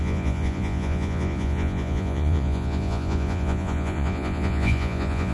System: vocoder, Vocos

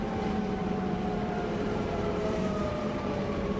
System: vocoder, BigVGAN v2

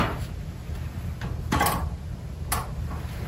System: none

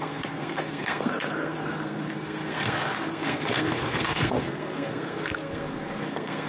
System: codec, SNAC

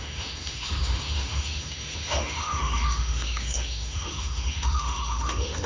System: autoencoder, DAC-VAE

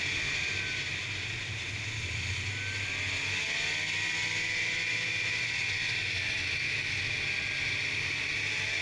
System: none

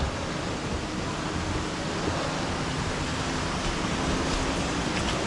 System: none